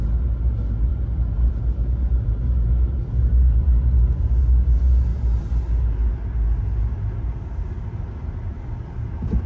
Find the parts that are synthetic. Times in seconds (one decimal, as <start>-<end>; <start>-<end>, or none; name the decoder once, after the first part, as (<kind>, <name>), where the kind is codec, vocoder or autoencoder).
none